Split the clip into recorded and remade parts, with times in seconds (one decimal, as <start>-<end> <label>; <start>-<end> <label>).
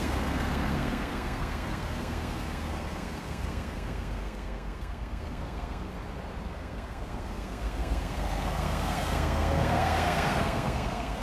0.0-5.9 remade; 5.9-6.4 recorded; 6.4-11.2 remade